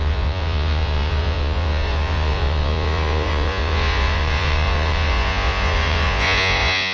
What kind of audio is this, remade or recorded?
remade